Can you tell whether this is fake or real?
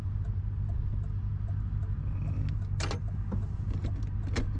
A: real